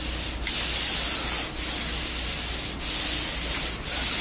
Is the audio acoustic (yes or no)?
yes